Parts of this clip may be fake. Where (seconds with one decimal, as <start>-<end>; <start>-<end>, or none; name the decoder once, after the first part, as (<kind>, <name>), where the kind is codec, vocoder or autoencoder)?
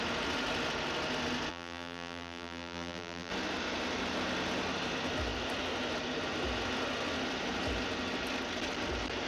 1.5-3.3 (vocoder, BigVGAN v2)